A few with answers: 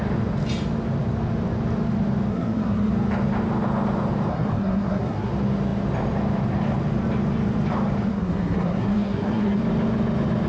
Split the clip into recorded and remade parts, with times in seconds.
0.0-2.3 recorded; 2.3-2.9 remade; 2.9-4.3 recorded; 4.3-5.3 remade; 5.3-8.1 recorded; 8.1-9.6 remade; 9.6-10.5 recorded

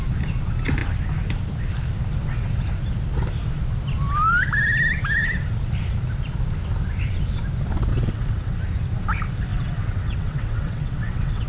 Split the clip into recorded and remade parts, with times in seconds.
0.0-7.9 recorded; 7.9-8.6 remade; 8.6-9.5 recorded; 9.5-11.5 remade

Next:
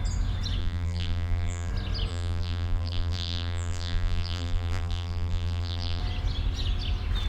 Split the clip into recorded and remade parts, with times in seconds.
0.0-0.6 recorded; 0.6-1.7 remade; 1.7-2.1 recorded; 2.1-6.0 remade; 6.0-7.3 recorded